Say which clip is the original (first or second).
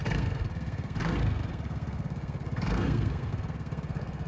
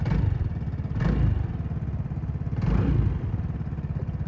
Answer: second